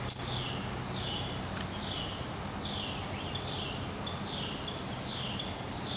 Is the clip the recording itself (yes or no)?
yes